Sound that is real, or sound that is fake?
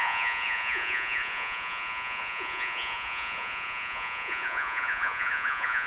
fake